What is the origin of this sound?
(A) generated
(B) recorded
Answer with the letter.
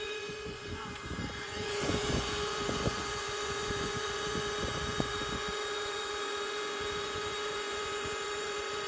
A